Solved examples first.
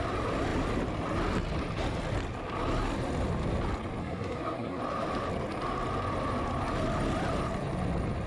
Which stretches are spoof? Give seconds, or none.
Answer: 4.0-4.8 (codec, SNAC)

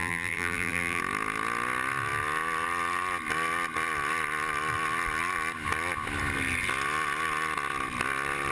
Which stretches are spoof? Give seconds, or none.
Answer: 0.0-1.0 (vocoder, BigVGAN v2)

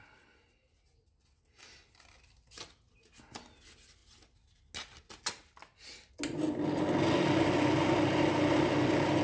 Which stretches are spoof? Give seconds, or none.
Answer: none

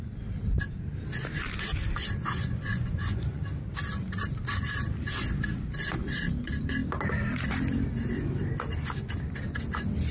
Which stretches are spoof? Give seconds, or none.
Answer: 2.2-3.4 (vocoder, Vocos)

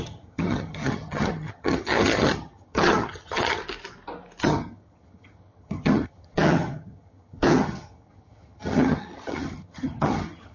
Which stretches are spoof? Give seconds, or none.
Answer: 0.0-3.6 (vocoder, HiFi-GAN); 4.4-10.5

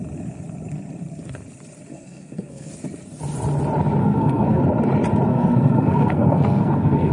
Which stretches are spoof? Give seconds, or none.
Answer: 1.9-2.7 (codec, SNAC); 4.0-4.6; 5.3-7.1

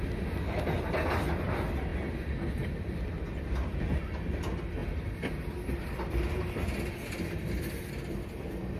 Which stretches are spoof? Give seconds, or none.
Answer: none

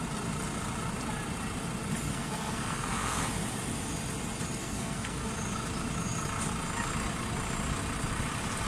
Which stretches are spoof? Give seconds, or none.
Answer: 2.1-3.2 (codec, SNAC); 4.6-5.3